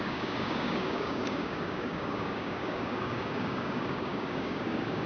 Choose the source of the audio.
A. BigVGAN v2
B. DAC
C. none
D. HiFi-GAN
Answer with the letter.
B